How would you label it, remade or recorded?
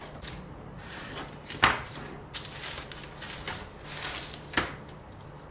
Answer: recorded